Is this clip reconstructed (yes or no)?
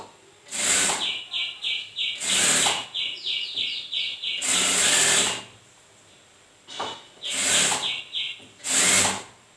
no